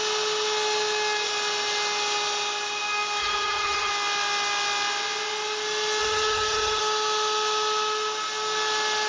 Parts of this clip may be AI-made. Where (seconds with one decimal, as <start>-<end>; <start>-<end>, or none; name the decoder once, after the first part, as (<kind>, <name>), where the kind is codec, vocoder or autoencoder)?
3.2-3.9 (vocoder, HiFi-GAN); 6.0-6.8